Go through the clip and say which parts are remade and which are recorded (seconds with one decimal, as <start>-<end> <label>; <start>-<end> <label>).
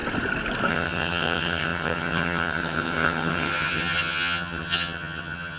0.0-0.7 recorded; 0.7-5.6 remade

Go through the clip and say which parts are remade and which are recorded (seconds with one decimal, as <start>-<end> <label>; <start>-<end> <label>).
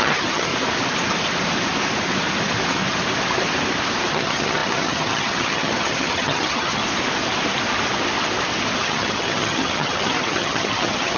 0.0-0.5 remade; 0.5-4.1 recorded; 4.1-6.8 remade; 6.8-8.8 recorded; 8.8-11.2 remade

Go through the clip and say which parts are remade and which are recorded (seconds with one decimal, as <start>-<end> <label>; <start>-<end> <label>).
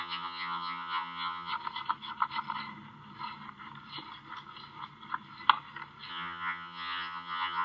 0.0-1.5 remade; 1.5-6.1 recorded; 6.1-7.6 remade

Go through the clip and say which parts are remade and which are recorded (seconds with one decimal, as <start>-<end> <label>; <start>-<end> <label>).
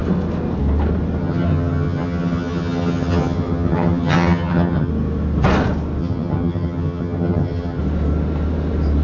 0.0-1.2 recorded; 1.2-4.9 remade; 4.9-6.0 recorded; 6.0-7.8 remade; 7.8-9.0 recorded